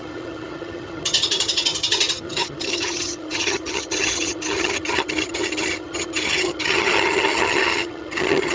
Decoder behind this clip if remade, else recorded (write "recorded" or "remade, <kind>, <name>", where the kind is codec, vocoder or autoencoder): remade, vocoder, HiFi-GAN